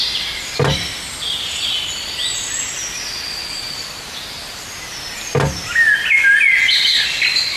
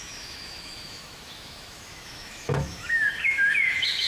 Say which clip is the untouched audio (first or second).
first